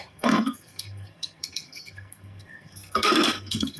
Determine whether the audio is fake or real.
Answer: fake